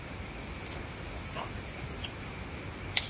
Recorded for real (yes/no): yes